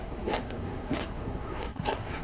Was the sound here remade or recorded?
remade